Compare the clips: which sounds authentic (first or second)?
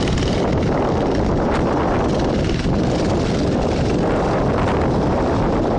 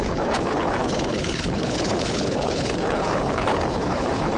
first